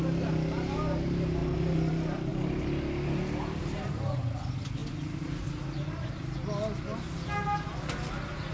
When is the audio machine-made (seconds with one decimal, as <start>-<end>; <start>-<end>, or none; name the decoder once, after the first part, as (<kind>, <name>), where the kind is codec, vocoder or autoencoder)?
2.3-4.1 (vocoder, BigVGAN v2)